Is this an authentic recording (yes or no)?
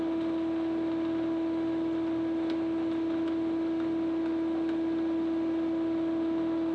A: yes